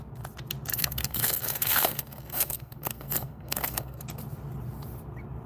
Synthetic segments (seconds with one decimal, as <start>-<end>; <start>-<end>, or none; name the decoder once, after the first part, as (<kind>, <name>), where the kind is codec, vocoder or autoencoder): 0.7-4.0 (codec, SNAC)